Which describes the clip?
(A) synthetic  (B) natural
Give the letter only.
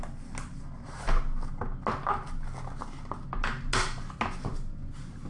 B